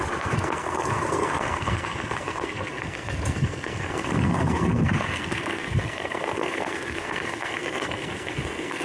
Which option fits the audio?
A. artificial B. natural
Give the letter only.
A